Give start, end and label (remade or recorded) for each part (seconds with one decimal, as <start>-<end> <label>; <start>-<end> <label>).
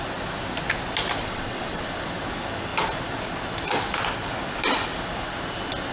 0.0-1.2 recorded; 1.2-1.8 remade; 1.8-5.9 recorded